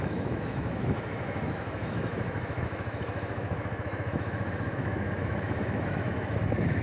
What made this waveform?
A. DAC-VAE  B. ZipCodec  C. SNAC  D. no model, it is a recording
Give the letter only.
A